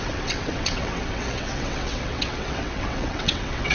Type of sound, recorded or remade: remade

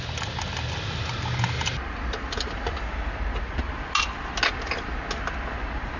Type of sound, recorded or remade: recorded